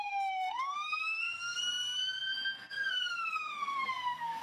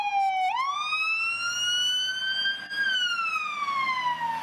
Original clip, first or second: second